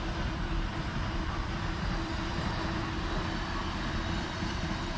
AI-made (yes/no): no